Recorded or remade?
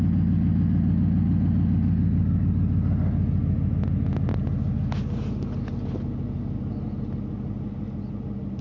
recorded